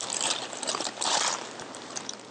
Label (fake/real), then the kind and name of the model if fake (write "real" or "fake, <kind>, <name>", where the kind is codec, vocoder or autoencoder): fake, vocoder, BigVGAN v2